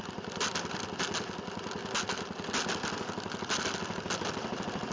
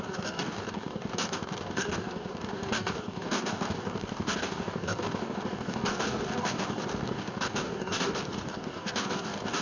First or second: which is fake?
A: second